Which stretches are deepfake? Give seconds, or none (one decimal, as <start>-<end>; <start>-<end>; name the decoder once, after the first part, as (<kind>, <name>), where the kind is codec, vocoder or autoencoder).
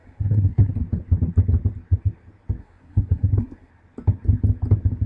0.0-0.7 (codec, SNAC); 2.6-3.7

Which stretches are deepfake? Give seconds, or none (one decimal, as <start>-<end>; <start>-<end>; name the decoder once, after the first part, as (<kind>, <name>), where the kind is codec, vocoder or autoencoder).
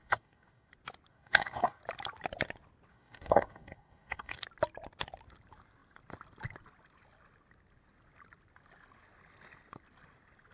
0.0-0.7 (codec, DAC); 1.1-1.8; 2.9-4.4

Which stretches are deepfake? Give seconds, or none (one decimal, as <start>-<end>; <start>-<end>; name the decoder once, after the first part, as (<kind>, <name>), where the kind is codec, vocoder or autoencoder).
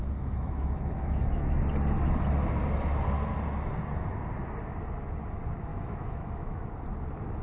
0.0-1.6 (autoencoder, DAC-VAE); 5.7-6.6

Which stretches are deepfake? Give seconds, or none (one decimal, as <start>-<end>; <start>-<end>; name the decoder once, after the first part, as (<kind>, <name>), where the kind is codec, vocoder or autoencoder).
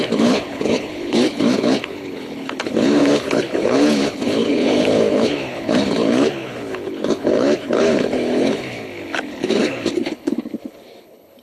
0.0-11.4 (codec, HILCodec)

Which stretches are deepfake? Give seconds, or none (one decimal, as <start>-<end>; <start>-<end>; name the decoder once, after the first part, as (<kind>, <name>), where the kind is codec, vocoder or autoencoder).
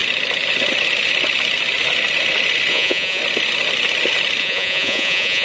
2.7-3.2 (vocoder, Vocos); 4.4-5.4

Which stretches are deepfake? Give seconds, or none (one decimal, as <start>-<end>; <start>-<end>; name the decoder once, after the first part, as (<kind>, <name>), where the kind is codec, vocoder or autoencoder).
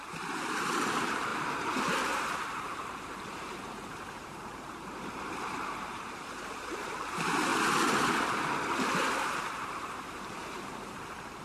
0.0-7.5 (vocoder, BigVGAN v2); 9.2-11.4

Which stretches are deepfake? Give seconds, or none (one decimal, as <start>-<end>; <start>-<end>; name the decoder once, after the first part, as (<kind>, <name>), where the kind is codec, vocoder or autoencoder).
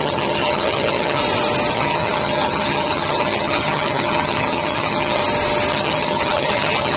0.0-1.2 (vocoder, HiFi-GAN); 1.7-5.2; 5.7-7.0